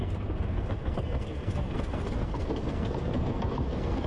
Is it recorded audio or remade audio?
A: remade